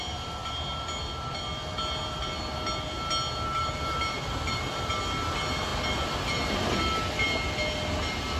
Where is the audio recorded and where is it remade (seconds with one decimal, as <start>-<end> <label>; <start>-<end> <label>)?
0.0-0.4 recorded; 0.4-1.4 remade; 1.4-3.6 recorded; 3.6-4.9 remade; 4.9-8.4 recorded